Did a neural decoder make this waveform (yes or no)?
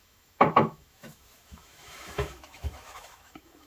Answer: yes